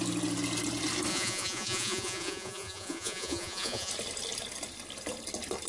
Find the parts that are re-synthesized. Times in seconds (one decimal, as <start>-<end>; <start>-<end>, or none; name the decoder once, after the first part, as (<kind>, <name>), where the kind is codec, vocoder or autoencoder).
1.1-3.9 (vocoder, Vocos)

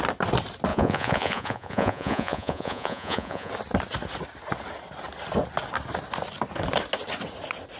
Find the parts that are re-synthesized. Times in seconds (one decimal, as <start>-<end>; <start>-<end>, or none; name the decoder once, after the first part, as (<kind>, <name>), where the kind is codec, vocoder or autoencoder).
0.7-3.5 (vocoder, Vocos)

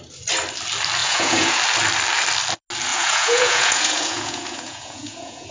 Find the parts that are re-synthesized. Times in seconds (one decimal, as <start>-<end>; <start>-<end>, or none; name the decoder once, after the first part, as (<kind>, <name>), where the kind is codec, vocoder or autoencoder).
1.0-1.6 (vocoder, Vocos); 2.9-5.5

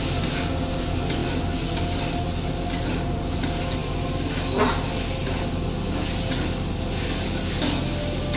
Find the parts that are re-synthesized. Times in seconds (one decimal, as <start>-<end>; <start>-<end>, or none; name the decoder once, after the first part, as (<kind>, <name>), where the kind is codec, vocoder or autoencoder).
none